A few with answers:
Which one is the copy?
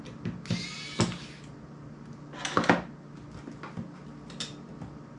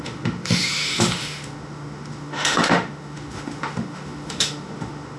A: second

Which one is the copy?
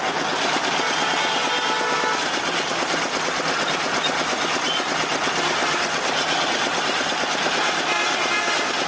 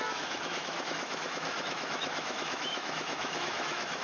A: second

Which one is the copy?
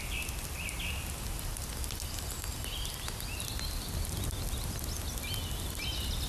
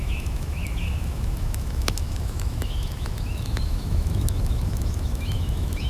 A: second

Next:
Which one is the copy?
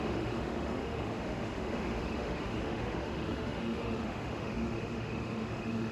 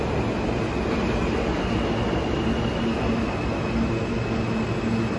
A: first